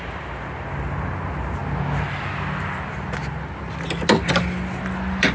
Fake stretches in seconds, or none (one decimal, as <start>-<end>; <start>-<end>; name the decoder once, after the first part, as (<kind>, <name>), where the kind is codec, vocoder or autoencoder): none